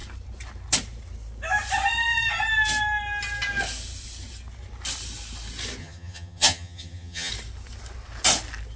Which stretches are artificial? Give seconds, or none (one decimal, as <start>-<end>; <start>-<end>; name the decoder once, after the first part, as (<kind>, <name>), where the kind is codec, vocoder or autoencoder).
5.8-7.3 (vocoder, HiFi-GAN)